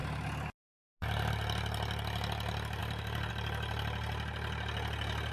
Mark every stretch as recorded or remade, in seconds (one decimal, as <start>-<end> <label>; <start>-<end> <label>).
0.0-2.8 recorded; 2.8-3.3 remade; 3.3-5.3 recorded